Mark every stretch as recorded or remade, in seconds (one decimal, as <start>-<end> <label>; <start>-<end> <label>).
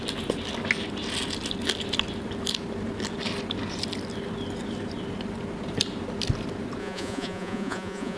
0.0-6.8 recorded; 6.8-8.2 remade